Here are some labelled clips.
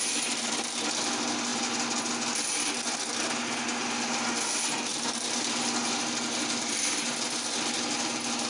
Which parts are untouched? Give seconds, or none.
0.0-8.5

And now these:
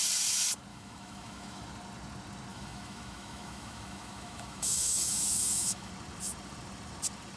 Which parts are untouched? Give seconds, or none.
0.0-0.7; 1.6-2.5; 5.9-7.4